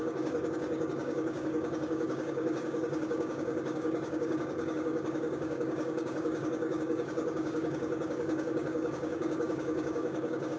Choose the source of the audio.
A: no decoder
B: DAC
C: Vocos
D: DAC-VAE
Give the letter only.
B